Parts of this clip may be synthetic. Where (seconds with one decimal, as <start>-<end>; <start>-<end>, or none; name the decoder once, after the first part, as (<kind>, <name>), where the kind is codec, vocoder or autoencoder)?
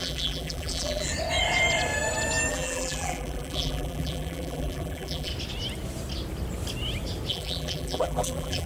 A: 0.0-1.1 (vocoder, BigVGAN v2); 2.5-5.3; 7.3-8.7